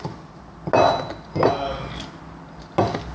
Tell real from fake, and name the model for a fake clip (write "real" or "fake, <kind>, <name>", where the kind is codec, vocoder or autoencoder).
real